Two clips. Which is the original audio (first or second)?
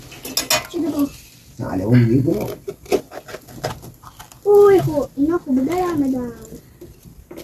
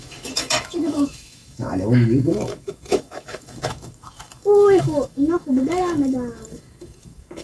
first